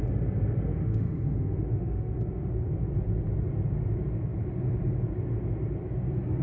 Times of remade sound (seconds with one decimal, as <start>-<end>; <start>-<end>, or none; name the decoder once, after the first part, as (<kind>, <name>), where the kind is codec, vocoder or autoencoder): 0.7-2.5 (autoencoder, DAC-VAE)